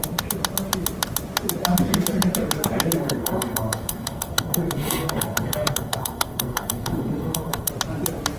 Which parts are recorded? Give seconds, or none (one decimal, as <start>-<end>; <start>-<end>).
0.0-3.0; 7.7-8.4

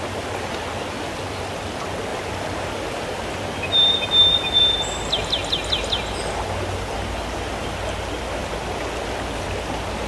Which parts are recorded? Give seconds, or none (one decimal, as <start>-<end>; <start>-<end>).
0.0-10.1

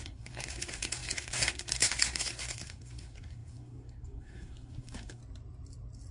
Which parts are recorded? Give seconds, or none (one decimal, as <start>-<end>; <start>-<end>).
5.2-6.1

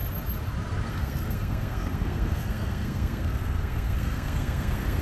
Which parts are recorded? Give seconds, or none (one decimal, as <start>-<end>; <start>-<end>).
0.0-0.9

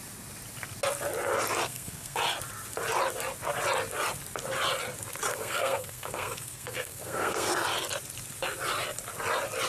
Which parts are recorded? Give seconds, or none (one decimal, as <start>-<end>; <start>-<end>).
0.0-1.6; 2.2-5.3; 7.5-9.7